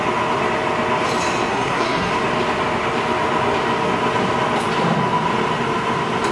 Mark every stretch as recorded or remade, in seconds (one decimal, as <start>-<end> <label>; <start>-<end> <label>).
0.0-1.5 recorded; 1.5-2.1 remade; 2.1-6.3 recorded